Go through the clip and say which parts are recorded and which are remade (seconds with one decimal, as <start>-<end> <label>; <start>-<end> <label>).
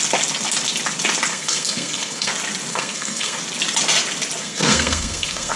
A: 0.0-1.3 recorded; 1.3-2.3 remade; 2.3-2.7 recorded; 2.7-3.4 remade; 3.4-4.4 recorded; 4.4-5.6 remade